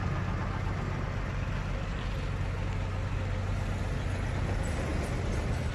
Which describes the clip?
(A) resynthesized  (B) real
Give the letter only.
B